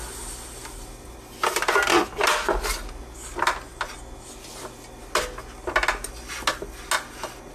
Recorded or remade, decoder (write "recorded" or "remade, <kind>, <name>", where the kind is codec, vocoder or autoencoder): recorded